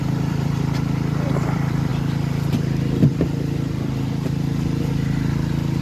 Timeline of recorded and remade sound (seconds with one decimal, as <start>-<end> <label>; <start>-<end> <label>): 0.0-1.9 remade; 1.9-5.8 recorded